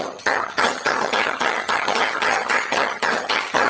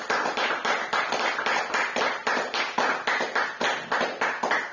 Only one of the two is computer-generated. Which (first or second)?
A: first